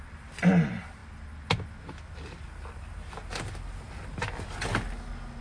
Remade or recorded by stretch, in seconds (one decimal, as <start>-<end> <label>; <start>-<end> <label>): 0.0-5.4 recorded